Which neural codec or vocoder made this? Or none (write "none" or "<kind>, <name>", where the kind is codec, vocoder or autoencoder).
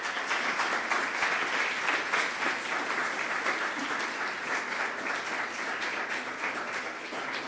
none